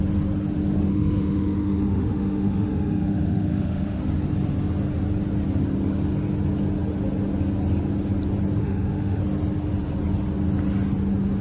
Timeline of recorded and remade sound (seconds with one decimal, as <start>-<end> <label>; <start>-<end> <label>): 0.0-0.9 recorded; 0.9-4.0 remade; 4.0-8.6 recorded; 8.6-9.2 remade; 9.2-11.4 recorded